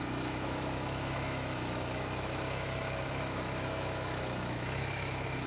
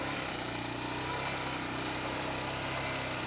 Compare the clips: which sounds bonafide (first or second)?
second